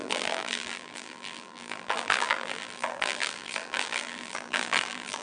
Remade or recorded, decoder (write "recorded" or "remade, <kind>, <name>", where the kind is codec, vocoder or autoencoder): remade, vocoder, BigVGAN v2